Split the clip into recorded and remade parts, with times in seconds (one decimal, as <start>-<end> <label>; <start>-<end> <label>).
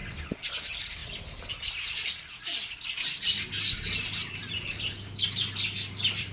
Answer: 0.0-6.3 recorded